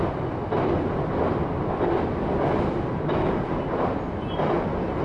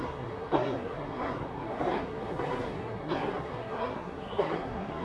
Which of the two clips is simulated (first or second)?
second